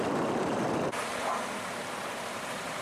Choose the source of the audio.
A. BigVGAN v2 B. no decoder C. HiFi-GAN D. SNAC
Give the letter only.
A